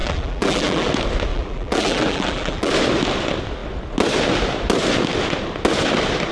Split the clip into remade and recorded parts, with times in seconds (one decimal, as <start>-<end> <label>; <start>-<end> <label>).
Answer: 0.0-0.9 remade; 0.9-1.3 recorded; 1.3-2.7 remade; 2.7-6.3 recorded